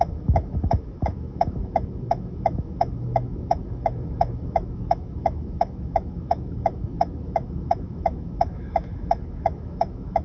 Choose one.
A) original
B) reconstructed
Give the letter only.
B